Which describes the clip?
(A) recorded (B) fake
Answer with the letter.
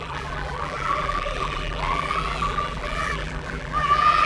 B